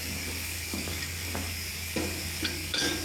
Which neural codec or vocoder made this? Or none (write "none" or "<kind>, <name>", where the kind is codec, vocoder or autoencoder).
codec, DAC